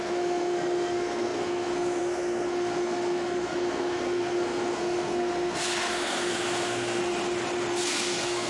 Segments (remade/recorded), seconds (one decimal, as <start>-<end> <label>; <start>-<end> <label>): 0.0-7.0 remade; 7.0-7.7 recorded; 7.7-8.5 remade